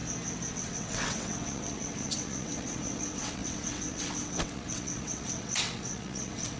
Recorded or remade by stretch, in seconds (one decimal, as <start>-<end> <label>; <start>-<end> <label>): 0.0-0.5 recorded; 0.5-6.6 remade

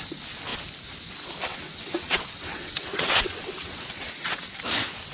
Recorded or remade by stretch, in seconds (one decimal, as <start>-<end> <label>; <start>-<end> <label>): 0.0-1.5 recorded; 1.5-4.6 remade; 4.6-5.1 recorded

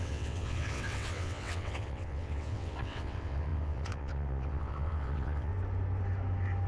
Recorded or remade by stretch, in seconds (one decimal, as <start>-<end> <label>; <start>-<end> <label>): 0.0-5.5 remade; 5.5-6.7 recorded

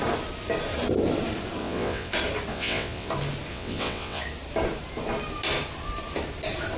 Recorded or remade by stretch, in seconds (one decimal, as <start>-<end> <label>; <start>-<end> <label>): 0.0-1.6 recorded; 1.6-2.1 remade; 2.1-2.5 recorded; 2.5-3.1 remade; 3.1-3.5 recorded; 3.5-4.2 remade; 4.2-6.8 recorded

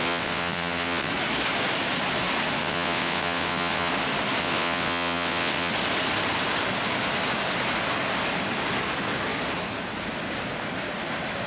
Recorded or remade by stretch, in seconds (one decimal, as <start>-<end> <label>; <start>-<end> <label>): 0.0-1.1 remade; 1.1-2.6 recorded; 2.6-3.9 remade; 3.9-4.4 recorded; 4.4-5.7 remade; 5.7-11.5 recorded

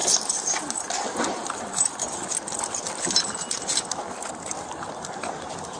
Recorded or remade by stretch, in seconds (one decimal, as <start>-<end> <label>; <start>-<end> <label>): 0.0-5.8 recorded

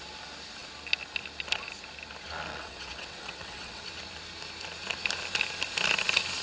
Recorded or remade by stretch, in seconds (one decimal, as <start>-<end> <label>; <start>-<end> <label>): 0.0-2.5 recorded; 2.5-3.8 remade; 3.8-6.4 recorded